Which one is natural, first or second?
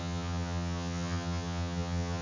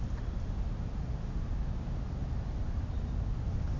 second